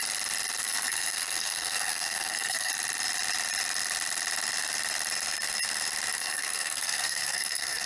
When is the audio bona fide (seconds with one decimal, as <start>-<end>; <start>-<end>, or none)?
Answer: 0.0-0.6; 2.7-6.2